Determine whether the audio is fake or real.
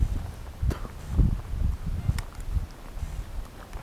real